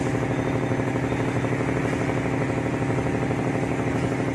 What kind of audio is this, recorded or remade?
recorded